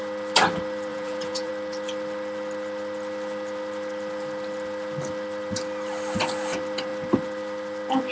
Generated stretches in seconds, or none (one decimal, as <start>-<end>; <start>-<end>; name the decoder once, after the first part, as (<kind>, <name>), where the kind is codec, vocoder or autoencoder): 0.9-1.5 (vocoder, Vocos)